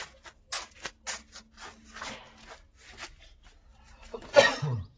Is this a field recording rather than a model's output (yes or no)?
yes